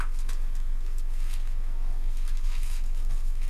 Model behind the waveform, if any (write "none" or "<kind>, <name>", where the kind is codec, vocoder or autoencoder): codec, SNAC